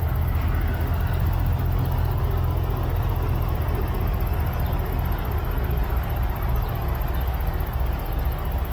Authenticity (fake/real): real